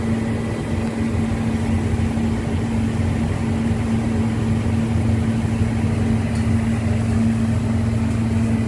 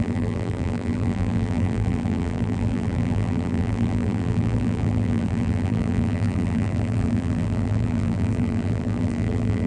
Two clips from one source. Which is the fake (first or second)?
second